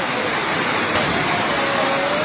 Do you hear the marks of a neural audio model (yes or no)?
no